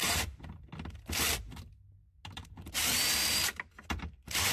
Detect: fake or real real